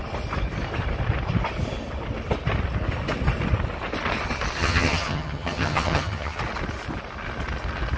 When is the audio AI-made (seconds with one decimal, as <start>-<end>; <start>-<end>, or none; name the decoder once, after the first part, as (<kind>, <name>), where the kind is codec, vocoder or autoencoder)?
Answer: 4.6-6.4 (vocoder, HiFi-GAN)